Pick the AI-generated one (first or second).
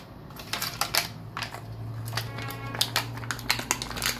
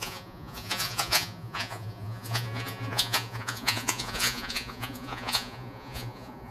second